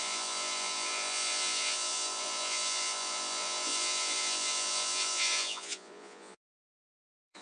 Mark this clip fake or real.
fake